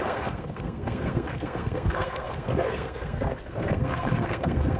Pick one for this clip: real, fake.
fake